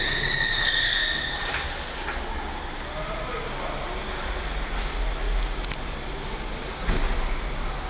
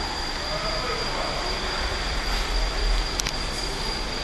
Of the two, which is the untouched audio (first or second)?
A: first